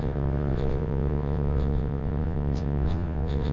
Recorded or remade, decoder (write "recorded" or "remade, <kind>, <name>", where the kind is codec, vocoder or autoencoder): remade, vocoder, WaveNeXt